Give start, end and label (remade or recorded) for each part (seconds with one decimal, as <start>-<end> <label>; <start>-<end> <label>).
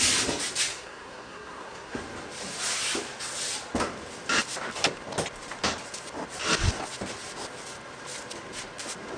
0.0-0.7 recorded; 0.7-2.0 remade; 2.0-9.2 recorded